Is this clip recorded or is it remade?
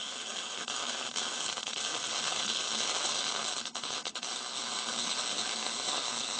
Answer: remade